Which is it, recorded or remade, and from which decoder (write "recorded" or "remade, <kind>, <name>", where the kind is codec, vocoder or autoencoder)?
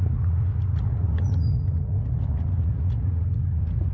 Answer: remade, vocoder, Vocos